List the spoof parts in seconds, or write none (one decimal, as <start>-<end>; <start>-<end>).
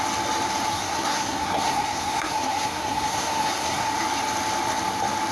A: 0.7-3.9